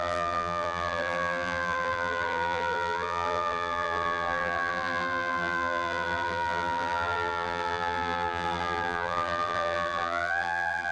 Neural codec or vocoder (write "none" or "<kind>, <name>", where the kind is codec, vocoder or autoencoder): vocoder, BigVGAN v2